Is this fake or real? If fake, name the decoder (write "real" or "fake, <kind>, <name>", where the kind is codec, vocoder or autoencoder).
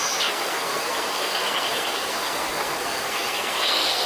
fake, codec, SNAC